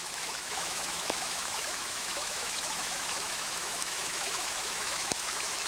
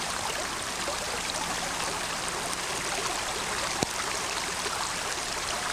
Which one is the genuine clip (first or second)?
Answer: second